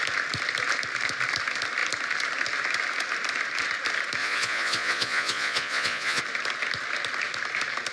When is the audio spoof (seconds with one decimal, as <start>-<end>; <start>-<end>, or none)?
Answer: 4.2-6.2